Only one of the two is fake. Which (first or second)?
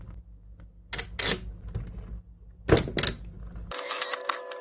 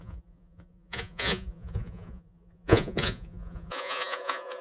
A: second